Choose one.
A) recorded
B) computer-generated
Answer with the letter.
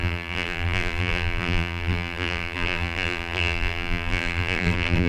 B